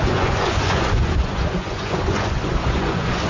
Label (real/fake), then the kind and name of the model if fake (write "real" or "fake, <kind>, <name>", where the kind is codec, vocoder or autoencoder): fake, vocoder, Vocos